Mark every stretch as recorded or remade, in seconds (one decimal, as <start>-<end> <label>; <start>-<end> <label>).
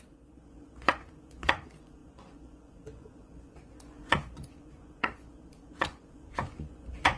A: 0.0-7.2 remade